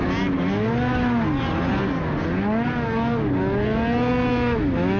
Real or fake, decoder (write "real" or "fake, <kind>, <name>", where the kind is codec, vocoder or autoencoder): real